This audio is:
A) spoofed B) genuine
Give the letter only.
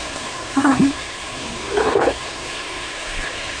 A